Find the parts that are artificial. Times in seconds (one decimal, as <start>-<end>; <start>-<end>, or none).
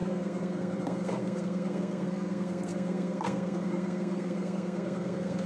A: 0.0-5.5